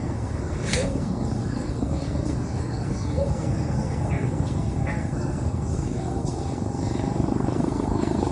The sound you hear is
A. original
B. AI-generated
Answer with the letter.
B